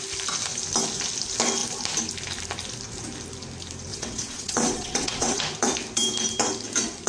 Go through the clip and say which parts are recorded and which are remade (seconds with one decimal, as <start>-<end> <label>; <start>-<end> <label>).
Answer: 0.0-3.9 recorded; 3.9-5.4 remade; 5.4-7.1 recorded